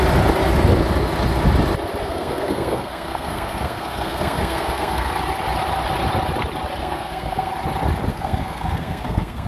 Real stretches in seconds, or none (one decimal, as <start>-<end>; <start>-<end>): 0.0-2.0; 5.1-6.8; 7.5-8.1